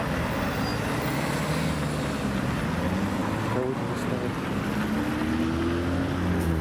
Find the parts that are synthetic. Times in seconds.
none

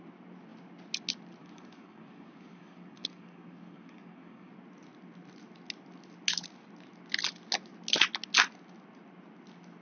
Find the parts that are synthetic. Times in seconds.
1.4-4.5

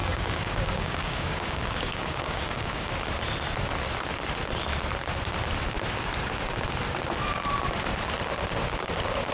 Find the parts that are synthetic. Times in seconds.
0.0-2.9

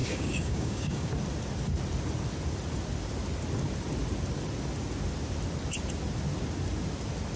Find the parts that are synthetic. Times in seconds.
0.0-1.1

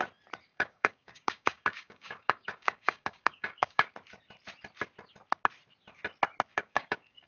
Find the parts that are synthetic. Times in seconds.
0.5-3.9; 6.5-7.3

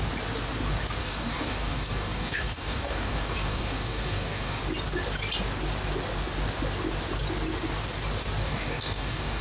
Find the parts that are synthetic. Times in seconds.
1.0-4.6; 8.4-9.4

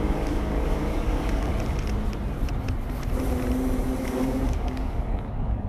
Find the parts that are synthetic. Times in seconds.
0.0-1.5; 4.0-5.7